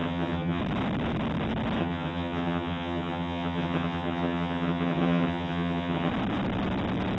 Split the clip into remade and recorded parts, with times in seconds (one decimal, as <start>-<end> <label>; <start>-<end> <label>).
0.0-0.6 remade; 0.6-1.8 recorded; 1.8-6.1 remade; 6.1-7.2 recorded